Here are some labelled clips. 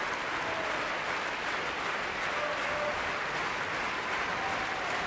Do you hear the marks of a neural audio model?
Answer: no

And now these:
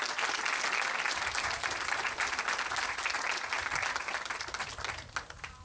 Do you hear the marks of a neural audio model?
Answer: no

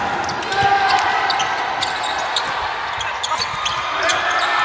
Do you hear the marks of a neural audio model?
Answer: no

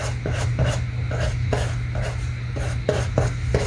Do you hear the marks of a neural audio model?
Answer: no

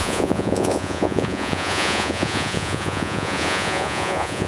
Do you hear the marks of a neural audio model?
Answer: yes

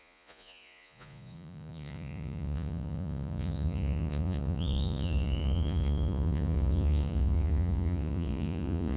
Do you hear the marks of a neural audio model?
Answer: yes